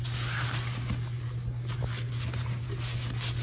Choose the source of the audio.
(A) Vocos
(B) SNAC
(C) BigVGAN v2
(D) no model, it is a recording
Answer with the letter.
D